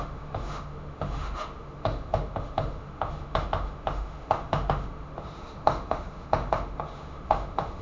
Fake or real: fake